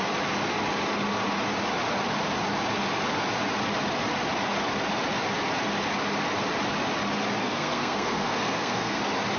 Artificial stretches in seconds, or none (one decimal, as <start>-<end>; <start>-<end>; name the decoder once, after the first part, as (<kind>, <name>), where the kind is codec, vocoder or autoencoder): 7.4-9.0 (codec, SNAC)